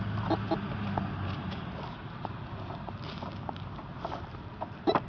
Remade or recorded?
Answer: recorded